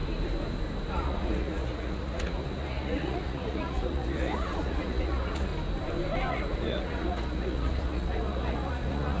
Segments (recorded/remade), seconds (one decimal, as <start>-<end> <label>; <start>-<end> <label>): 0.0-0.9 recorded; 0.9-5.5 remade; 5.5-6.3 recorded; 6.3-9.2 remade